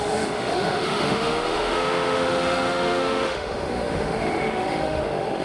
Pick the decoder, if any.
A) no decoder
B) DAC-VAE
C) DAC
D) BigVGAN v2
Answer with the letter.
B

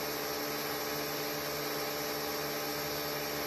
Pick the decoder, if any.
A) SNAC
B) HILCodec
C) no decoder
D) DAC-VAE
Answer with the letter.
C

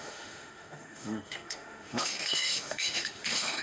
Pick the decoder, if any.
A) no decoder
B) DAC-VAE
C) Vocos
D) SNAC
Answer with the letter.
B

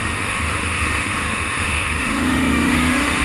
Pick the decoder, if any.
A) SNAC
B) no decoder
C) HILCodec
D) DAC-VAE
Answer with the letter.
D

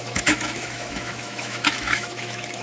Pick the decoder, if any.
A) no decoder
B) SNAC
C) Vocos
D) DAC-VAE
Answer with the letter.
D